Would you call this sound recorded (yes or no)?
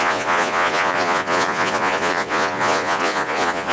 no